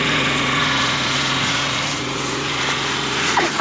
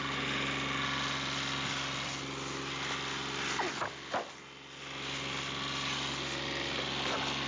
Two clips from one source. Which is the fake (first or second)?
first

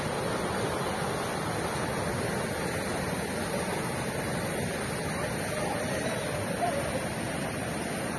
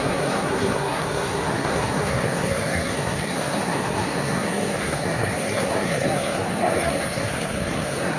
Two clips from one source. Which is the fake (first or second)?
second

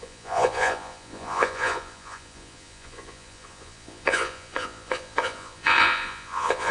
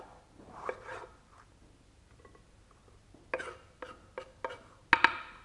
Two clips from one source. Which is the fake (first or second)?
first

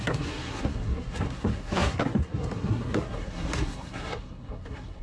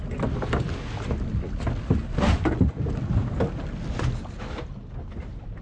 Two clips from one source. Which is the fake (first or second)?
first